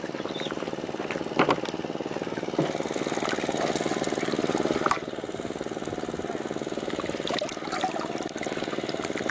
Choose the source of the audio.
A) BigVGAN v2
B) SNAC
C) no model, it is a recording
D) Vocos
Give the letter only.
C